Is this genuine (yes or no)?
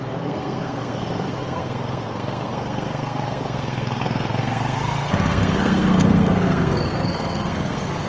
no